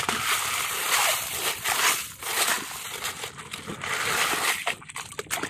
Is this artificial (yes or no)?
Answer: yes